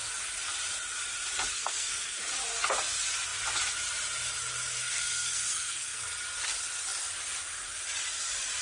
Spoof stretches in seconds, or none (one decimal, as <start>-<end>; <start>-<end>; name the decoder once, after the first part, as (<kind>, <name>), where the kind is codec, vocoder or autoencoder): 1.5-2.2 (codec, SNAC); 4.8-6.0